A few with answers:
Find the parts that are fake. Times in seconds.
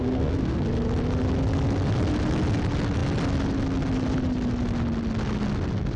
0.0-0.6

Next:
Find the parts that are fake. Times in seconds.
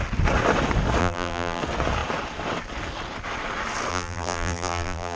1.0-1.6; 3.9-5.2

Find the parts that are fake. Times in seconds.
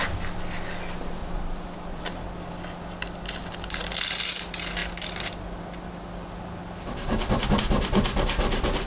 1.2-2.1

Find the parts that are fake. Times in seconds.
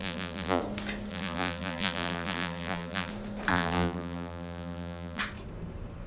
0.0-0.6; 1.1-3.1; 3.5-5.2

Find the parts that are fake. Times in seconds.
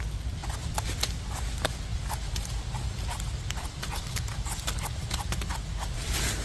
none